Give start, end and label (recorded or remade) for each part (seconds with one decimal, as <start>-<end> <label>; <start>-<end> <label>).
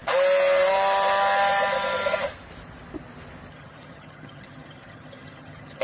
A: 0.0-3.5 recorded; 3.5-5.8 remade